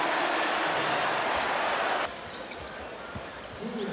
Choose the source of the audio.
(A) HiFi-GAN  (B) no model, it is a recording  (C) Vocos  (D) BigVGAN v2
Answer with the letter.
B